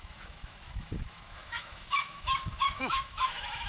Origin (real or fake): fake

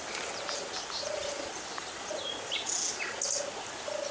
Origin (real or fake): real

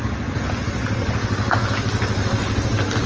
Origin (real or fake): real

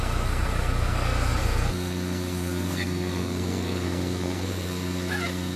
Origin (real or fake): fake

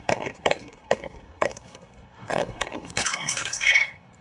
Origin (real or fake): fake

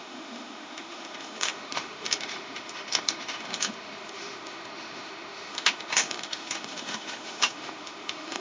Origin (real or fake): fake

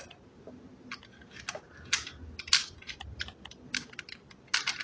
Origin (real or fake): real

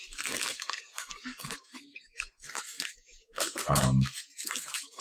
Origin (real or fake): fake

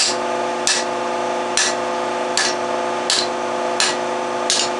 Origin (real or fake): real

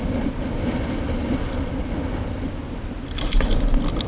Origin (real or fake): real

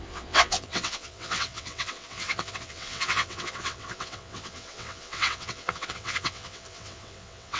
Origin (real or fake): fake